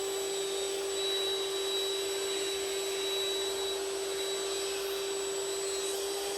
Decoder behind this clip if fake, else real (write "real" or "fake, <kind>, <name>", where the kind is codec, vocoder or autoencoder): real